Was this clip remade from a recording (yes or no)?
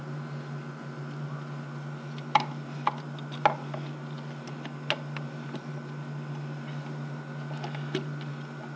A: no